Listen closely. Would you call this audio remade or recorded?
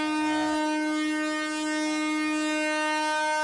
recorded